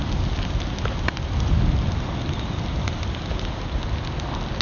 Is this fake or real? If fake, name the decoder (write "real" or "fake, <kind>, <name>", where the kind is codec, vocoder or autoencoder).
real